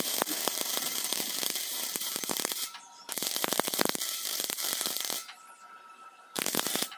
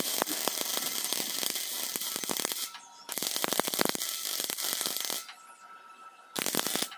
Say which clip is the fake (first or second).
first